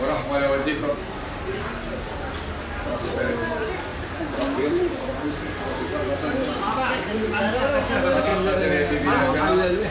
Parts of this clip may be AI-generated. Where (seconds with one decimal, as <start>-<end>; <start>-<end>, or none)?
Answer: 0.7-1.5; 3.9-5.6